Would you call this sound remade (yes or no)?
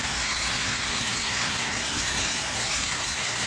yes